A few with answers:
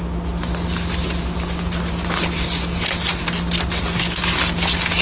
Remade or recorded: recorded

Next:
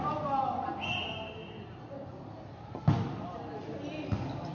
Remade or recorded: recorded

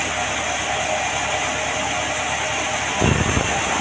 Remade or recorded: recorded